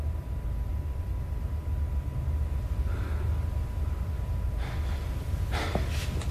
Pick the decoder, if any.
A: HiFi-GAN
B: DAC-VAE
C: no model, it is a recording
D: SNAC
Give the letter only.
C